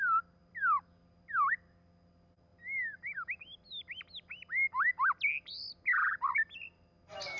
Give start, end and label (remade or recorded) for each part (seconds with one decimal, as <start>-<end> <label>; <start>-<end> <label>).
0.0-7.4 recorded

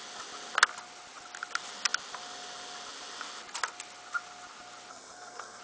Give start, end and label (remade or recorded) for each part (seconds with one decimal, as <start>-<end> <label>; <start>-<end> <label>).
0.0-4.9 recorded; 4.9-5.6 remade

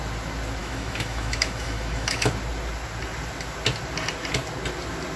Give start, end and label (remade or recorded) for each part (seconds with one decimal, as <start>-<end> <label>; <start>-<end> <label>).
0.0-0.6 recorded; 0.6-2.3 remade; 2.3-5.2 recorded

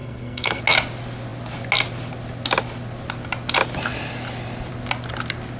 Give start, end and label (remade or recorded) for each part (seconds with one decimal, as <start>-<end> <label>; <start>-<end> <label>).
0.0-0.6 remade; 0.6-5.6 recorded

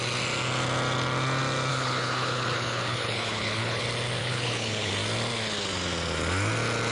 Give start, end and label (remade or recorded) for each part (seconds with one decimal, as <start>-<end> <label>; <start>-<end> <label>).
0.0-1.7 recorded; 1.7-3.8 remade; 3.8-4.2 recorded; 4.2-4.9 remade; 4.9-6.9 recorded

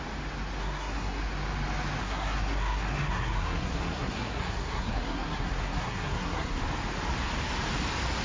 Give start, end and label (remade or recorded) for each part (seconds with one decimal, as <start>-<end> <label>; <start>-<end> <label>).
0.0-0.6 recorded; 0.6-1.2 remade; 1.2-2.0 recorded; 2.0-6.6 remade; 6.6-8.2 recorded

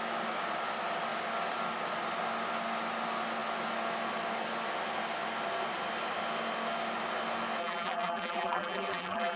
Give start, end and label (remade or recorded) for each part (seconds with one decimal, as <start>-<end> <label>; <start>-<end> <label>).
0.0-7.6 recorded; 7.6-9.4 remade